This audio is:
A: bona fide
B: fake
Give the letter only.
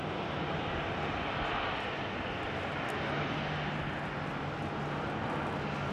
A